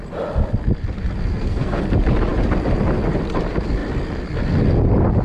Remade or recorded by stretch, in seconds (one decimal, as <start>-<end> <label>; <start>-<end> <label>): 0.0-1.3 recorded; 1.3-1.8 remade; 1.8-5.2 recorded